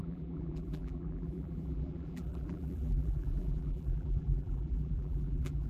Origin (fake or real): fake